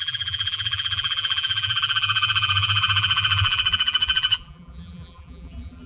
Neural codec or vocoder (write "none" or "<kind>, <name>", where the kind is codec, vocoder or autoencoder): vocoder, BigVGAN v2